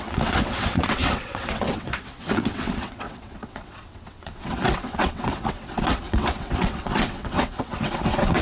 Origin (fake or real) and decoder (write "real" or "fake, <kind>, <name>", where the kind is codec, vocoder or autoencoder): fake, vocoder, WaveNeXt